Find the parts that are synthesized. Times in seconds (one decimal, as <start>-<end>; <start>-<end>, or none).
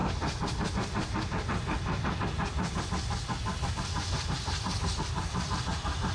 none